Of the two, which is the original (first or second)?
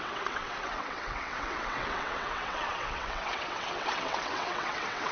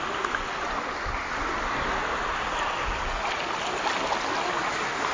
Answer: second